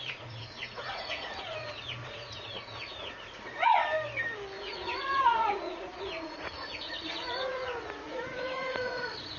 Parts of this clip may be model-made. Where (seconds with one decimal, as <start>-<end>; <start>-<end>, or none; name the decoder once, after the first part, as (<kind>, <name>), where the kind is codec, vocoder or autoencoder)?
0.0-3.8 (vocoder, Vocos); 4.6-9.4